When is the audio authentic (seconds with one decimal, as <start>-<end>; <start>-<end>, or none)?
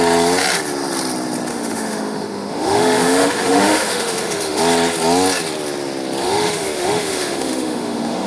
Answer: 0.0-1.5; 4.6-6.2